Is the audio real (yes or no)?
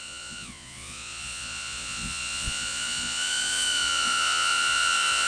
no